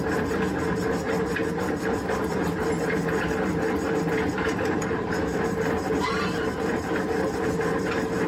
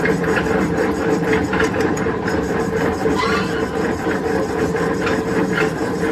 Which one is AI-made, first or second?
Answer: second